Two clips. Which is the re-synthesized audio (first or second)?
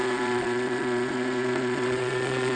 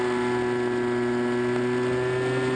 first